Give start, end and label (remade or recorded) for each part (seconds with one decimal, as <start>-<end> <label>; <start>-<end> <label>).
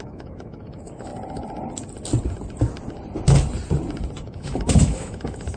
0.0-1.1 remade; 1.1-4.2 recorded; 4.2-5.6 remade